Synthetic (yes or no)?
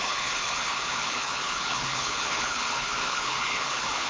yes